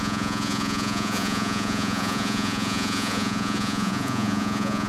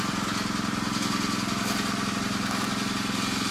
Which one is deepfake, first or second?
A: first